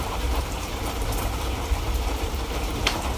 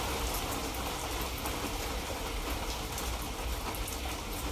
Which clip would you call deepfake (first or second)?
first